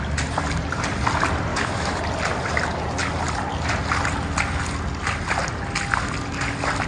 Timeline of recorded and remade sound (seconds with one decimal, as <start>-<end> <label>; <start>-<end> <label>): 0.0-1.5 recorded; 1.5-2.0 remade; 2.0-6.9 recorded